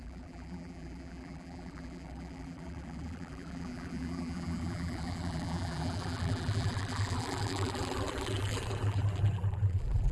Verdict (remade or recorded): remade